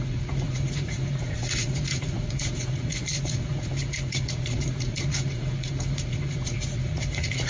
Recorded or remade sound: remade